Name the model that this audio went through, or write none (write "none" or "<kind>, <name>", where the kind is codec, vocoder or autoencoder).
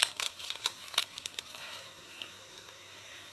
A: codec, SNAC